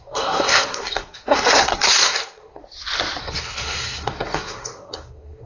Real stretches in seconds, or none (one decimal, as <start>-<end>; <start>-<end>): 2.6-3.2